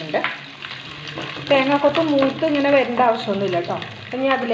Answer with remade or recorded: recorded